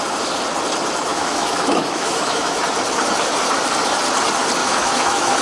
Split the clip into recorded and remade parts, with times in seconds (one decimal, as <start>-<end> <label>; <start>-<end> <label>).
0.0-1.1 recorded; 1.1-2.6 remade; 2.6-4.6 recorded; 4.6-5.4 remade